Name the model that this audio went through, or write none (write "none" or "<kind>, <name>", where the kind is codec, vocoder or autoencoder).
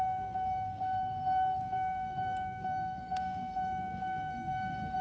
codec, SNAC